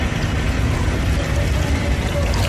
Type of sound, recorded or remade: recorded